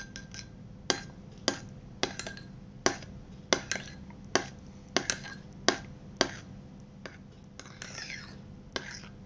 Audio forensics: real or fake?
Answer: real